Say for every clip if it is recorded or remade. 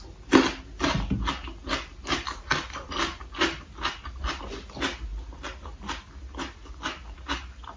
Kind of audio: recorded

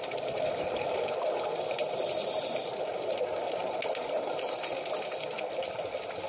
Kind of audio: recorded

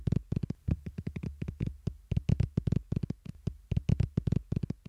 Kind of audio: recorded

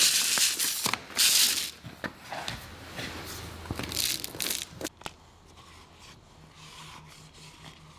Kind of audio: recorded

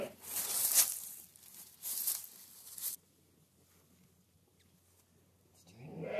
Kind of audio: recorded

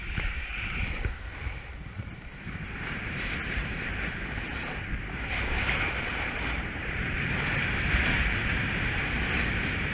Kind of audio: remade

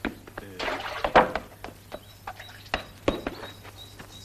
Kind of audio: recorded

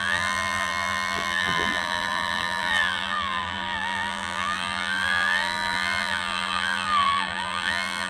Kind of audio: remade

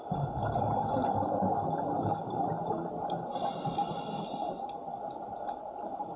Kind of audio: recorded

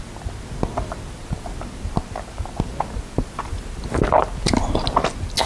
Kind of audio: recorded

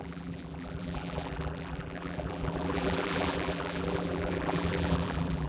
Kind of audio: remade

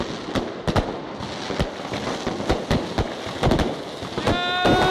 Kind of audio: recorded